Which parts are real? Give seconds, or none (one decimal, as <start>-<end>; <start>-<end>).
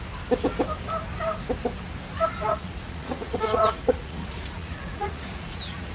0.0-2.5